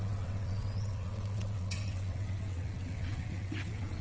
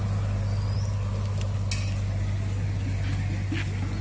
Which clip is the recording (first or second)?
second